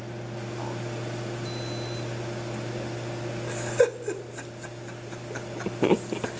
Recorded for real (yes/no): yes